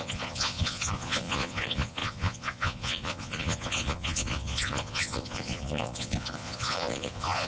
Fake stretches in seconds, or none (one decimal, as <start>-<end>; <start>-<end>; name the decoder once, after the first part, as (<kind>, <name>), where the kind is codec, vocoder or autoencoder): 0.0-7.5 (vocoder, Vocos)